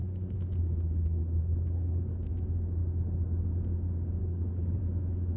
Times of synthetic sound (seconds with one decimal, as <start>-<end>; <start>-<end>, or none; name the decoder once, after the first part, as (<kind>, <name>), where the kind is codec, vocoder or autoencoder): 0.0-2.3 (codec, HILCodec); 4.2-4.8